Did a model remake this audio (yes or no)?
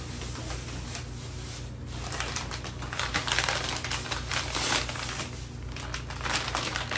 no